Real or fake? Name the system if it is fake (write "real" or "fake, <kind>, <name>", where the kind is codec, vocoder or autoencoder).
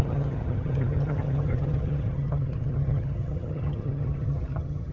fake, vocoder, HiFi-GAN